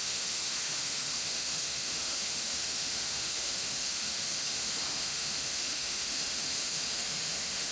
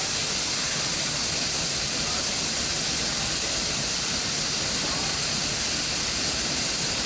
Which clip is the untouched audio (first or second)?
second